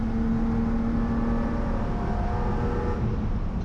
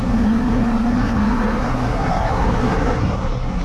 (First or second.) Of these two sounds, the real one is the first